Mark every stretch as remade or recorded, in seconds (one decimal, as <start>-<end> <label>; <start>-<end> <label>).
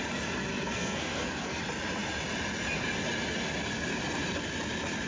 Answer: 0.0-0.5 recorded; 0.5-1.6 remade; 1.6-5.1 recorded